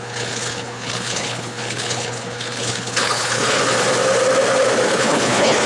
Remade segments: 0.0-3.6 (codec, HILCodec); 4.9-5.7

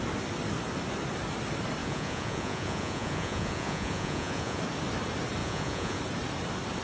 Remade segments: 1.8-4.6 (vocoder, Vocos); 5.4-6.0

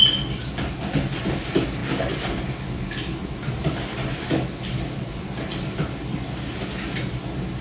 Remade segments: none

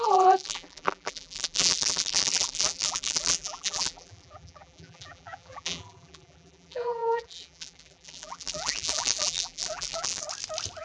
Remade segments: 0.0-10.2 (vocoder, BigVGAN v2)

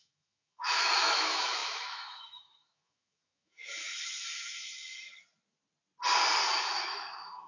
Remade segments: 0.0-5.1 (autoencoder, DAC-VAE); 6.5-7.5

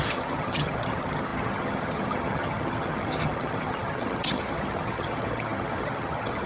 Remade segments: 0.0-6.5 (vocoder, HiFi-GAN)